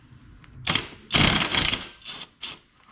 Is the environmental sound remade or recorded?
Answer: recorded